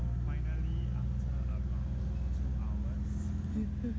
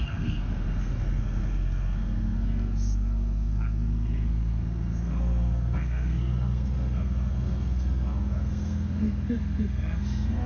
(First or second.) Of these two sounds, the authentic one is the first